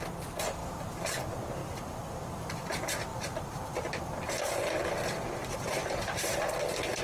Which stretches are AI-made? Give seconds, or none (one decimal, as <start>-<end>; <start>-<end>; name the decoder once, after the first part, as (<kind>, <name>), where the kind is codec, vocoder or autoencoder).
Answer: 0.6-1.2 (vocoder, BigVGAN v2); 3.1-4.5; 5.4-6.5